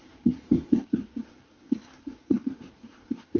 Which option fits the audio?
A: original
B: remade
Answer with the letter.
B